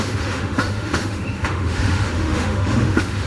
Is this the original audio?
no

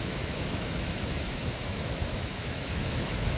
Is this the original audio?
no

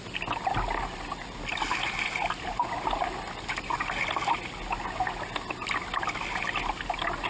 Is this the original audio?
yes